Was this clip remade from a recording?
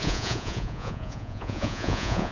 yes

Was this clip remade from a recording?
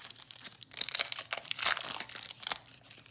no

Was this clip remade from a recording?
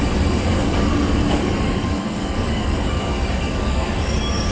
yes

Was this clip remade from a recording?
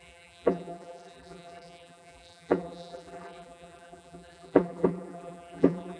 yes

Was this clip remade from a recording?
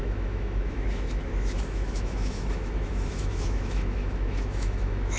yes